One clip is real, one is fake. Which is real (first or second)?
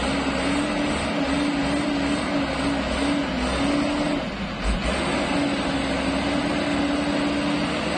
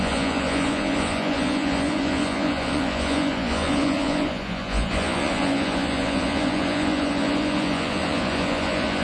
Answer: first